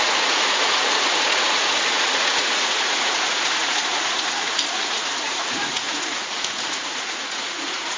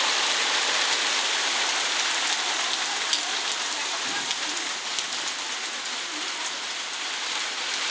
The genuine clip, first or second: second